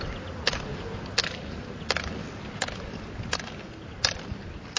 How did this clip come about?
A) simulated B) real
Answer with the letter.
B